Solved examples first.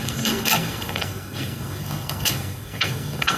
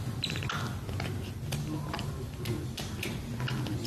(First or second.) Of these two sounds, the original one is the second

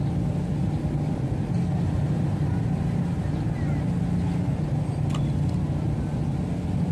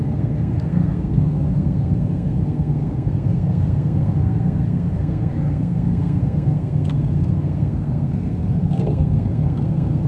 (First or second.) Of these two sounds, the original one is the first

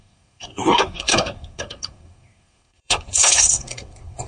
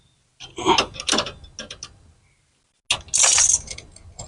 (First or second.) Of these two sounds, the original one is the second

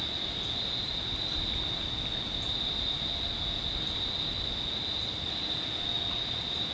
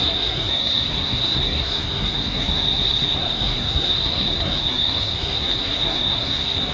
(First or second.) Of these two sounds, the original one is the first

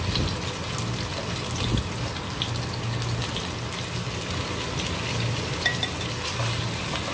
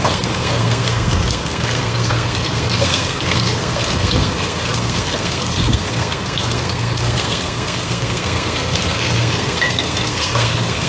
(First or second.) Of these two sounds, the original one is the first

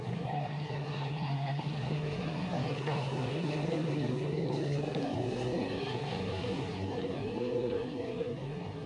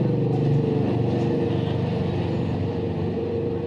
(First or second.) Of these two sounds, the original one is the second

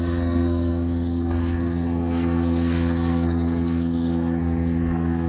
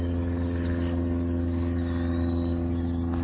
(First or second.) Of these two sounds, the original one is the second